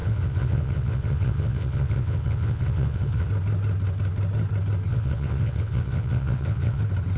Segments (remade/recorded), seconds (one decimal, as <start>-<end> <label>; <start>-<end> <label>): 0.0-3.3 remade; 3.3-4.9 recorded; 4.9-6.8 remade; 6.8-7.2 recorded

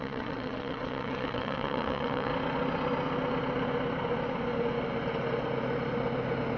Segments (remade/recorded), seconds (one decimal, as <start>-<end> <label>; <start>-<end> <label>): 0.0-2.3 remade; 2.3-6.6 recorded